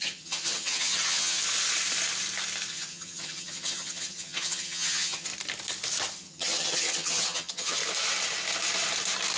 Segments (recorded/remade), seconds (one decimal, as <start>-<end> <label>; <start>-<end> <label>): 0.0-1.4 remade; 1.4-2.7 recorded; 2.7-5.3 remade; 5.3-6.1 recorded; 6.1-7.8 remade; 7.8-9.4 recorded